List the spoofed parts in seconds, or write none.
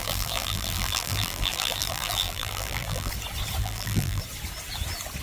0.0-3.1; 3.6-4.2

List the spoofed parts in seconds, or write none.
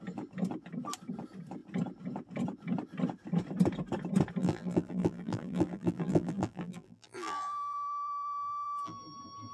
4.4-9.0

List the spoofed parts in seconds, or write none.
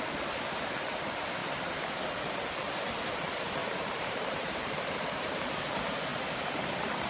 1.4-1.9; 3.6-5.0; 6.1-7.1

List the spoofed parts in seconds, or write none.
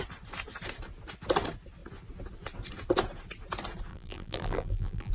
3.9-5.1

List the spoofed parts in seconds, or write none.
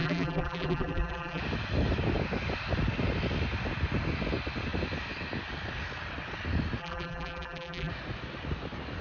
0.0-1.4; 6.8-7.9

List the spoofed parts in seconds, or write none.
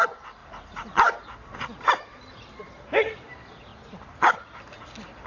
0.0-3.7; 4.3-5.3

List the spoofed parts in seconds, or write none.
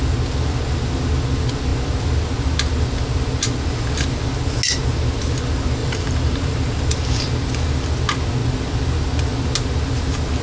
5.8-6.8